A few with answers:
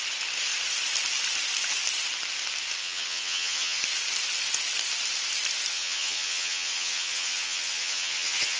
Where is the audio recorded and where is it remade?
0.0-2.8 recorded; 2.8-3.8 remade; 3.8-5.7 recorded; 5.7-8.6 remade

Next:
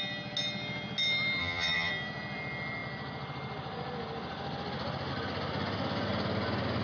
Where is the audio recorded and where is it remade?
0.0-1.4 recorded; 1.4-1.9 remade; 1.9-6.8 recorded

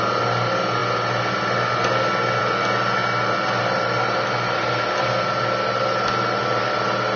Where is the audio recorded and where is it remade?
0.0-7.2 recorded

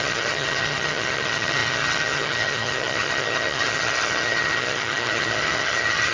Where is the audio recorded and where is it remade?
0.0-6.1 remade

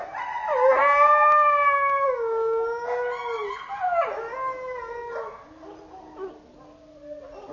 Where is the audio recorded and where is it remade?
0.0-7.5 recorded

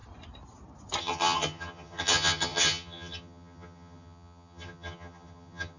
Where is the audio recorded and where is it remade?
0.0-1.0 recorded; 1.0-5.8 remade

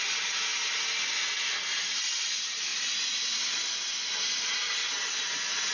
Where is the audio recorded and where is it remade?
0.0-5.7 recorded